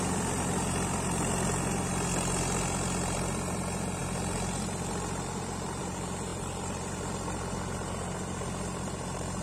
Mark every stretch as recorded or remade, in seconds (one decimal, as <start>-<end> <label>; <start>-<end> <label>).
0.0-6.3 recorded; 6.3-6.9 remade; 6.9-9.4 recorded